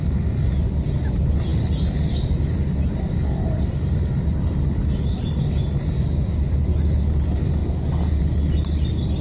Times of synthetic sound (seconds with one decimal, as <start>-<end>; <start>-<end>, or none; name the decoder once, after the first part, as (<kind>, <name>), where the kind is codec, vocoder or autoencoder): none